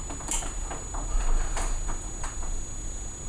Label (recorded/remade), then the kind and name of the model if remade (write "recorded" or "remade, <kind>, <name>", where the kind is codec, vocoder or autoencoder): recorded